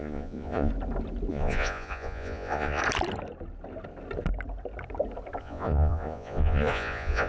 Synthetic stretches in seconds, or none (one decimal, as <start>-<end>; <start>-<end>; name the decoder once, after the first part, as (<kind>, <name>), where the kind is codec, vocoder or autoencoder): 0.0-0.7 (vocoder, Vocos); 1.3-2.8; 5.4-7.3